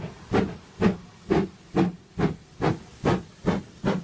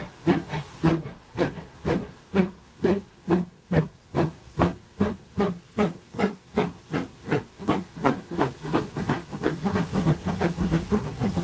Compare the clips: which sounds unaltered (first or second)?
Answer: first